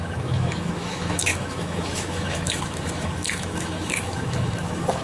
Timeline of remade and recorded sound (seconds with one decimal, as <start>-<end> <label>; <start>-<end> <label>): 0.0-5.0 remade